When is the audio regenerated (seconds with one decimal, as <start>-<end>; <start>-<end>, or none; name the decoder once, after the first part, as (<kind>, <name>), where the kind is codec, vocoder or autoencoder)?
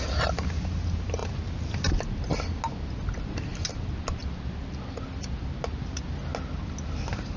none